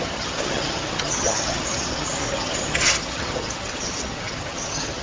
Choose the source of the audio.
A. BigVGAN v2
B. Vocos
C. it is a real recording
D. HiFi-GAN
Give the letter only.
D